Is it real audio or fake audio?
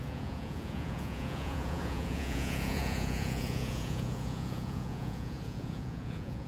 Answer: fake